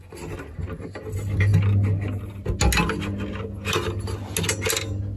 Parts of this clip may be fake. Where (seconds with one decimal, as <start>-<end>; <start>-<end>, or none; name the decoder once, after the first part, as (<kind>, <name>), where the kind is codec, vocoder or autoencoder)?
none